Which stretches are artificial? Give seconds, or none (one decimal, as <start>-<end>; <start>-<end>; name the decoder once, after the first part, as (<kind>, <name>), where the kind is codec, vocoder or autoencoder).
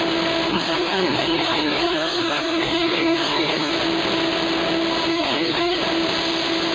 0.5-3.7 (codec, SNAC); 5.1-5.8